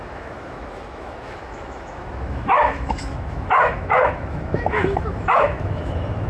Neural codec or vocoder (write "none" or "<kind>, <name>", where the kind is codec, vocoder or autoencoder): autoencoder, DAC-VAE